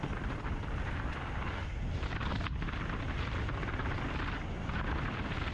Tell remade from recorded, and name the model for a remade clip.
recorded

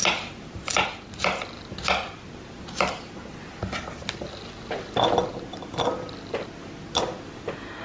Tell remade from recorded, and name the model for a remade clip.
recorded